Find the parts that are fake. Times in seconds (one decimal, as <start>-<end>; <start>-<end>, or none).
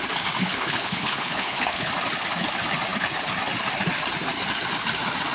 0.4-1.9